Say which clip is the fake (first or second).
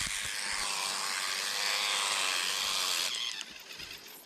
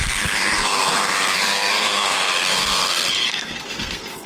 second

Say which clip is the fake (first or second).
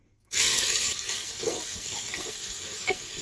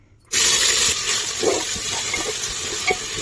first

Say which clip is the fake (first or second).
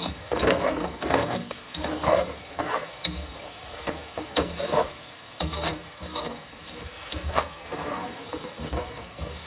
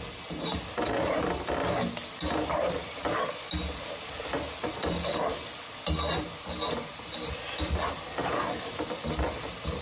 first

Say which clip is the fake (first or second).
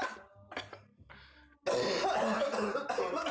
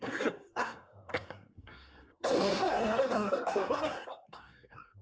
second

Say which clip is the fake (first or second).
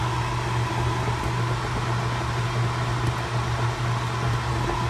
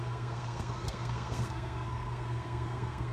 second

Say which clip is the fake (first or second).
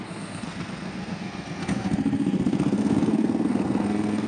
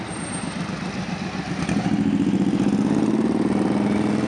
first